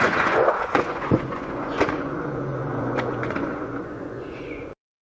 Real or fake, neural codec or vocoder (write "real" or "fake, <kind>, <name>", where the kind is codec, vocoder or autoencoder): fake, vocoder, Vocos